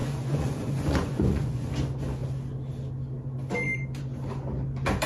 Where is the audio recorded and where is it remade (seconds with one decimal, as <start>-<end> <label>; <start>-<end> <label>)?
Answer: 0.0-1.7 remade; 1.7-5.1 recorded